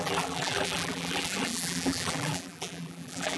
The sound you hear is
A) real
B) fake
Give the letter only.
B